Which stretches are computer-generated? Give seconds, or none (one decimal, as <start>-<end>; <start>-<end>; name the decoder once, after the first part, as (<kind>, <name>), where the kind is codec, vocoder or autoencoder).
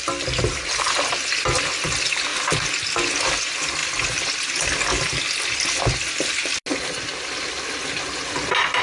none